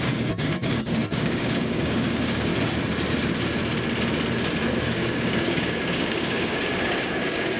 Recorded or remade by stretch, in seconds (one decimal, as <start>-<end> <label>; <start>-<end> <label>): 0.0-2.5 remade; 2.5-4.8 recorded; 4.8-7.6 remade